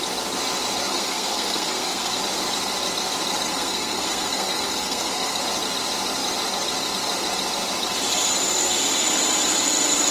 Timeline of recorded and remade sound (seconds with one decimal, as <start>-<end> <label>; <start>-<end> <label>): 0.0-0.9 recorded; 0.9-2.2 remade; 2.2-3.5 recorded; 3.5-5.4 remade; 5.4-10.1 recorded